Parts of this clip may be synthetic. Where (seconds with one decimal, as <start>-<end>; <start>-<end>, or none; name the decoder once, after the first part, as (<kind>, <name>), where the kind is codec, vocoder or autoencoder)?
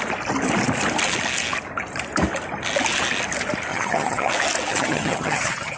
3.7-4.3 (vocoder, HiFi-GAN); 4.7-5.8